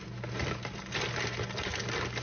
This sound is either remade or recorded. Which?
recorded